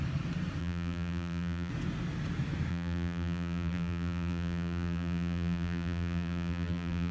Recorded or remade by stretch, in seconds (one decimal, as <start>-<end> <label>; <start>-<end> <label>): 0.0-0.6 recorded; 0.6-1.7 remade; 1.7-2.7 recorded; 2.7-7.1 remade